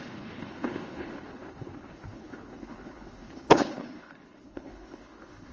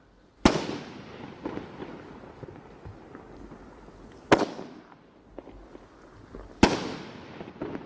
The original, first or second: second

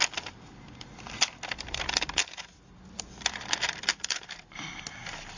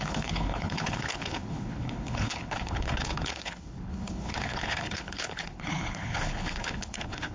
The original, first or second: first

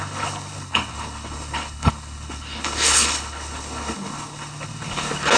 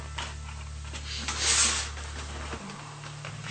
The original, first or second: second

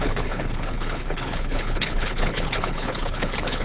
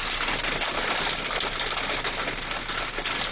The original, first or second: second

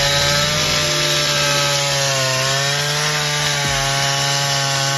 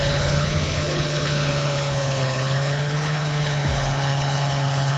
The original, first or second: first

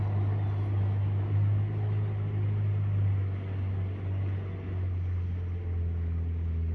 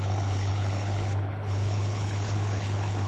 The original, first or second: first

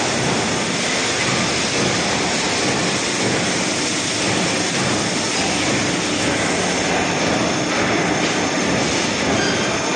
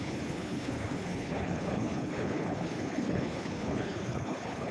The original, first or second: first